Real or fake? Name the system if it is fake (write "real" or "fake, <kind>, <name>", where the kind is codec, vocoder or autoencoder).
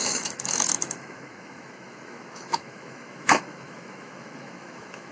fake, autoencoder, DAC-VAE